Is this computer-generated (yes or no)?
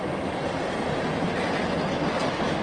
no